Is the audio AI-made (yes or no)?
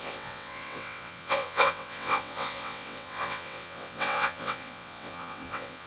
yes